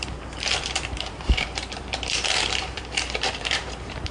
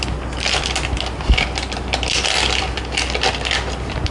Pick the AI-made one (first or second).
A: first